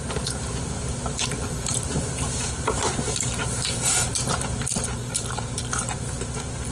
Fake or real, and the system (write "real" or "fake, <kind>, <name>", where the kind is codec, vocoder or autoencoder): fake, vocoder, BigVGAN v2